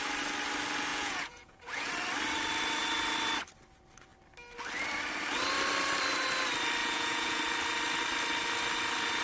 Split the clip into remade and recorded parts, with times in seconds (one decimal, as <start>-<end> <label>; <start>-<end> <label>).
0.0-0.9 recorded; 0.9-1.9 remade; 1.9-6.8 recorded; 6.8-7.4 remade; 7.4-9.2 recorded